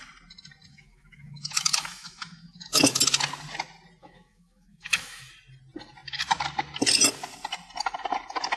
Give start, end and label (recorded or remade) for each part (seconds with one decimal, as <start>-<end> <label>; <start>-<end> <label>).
0.0-0.7 recorded; 0.7-3.0 remade; 3.0-4.0 recorded; 4.0-5.3 remade; 5.3-8.6 recorded